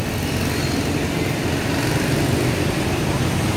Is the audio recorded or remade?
recorded